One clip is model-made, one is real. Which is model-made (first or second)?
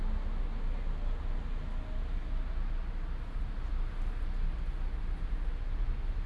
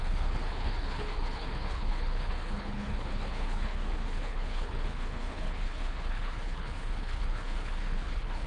second